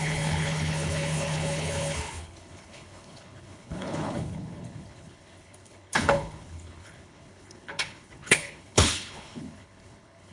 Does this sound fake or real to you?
fake